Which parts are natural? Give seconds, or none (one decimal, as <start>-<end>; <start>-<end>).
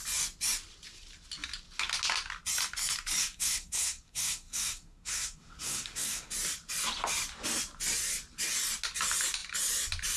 0.0-3.2; 6.3-10.2